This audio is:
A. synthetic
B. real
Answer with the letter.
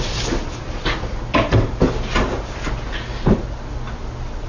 B